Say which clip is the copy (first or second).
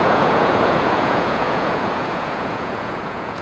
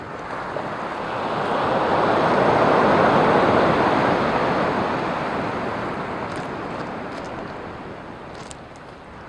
first